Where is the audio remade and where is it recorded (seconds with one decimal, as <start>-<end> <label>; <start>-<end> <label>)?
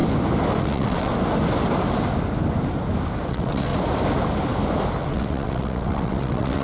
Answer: 0.0-0.6 recorded; 0.6-1.1 remade; 1.1-3.3 recorded; 3.3-3.7 remade; 3.7-5.0 recorded; 5.0-6.6 remade